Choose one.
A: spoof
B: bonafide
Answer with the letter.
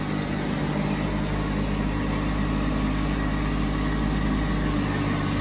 B